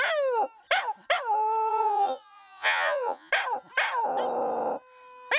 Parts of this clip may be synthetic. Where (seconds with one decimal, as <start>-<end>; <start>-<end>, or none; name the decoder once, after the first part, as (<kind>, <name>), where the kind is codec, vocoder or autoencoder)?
1.7-3.3 (vocoder, Vocos)